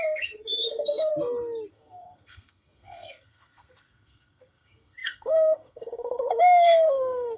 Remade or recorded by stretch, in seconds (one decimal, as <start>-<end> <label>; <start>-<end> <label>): 0.0-1.1 remade; 1.1-1.7 recorded; 1.7-7.4 remade